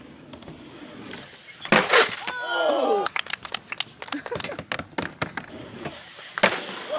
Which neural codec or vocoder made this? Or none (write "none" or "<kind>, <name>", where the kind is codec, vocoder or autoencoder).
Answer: none